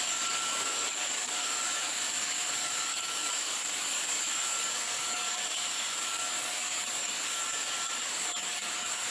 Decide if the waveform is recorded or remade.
remade